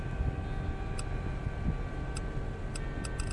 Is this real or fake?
real